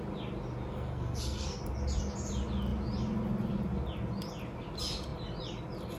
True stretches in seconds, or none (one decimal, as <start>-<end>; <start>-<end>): 0.0-0.7; 1.6-6.0